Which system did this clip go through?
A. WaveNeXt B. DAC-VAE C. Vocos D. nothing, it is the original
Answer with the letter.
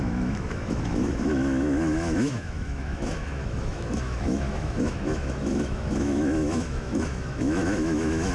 B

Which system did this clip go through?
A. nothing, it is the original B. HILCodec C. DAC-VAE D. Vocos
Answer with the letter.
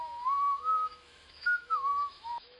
C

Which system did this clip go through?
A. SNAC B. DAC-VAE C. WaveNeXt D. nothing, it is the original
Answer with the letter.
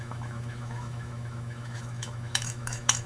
B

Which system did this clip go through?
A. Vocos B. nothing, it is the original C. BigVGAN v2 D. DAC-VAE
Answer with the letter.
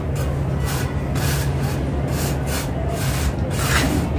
B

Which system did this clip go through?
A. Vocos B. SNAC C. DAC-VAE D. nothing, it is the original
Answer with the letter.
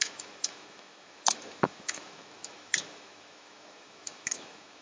C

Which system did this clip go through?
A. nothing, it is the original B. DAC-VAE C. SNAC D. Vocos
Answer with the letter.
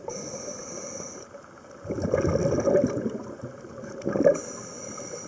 A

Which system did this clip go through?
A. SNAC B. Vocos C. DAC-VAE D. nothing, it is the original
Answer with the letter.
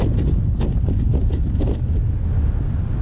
D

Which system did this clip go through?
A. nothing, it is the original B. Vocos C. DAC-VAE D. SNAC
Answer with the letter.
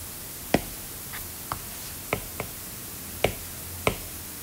A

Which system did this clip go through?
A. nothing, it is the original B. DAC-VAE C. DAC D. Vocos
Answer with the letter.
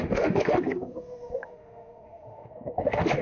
B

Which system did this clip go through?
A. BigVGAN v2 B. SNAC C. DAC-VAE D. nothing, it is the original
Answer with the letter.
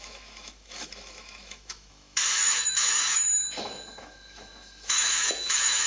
C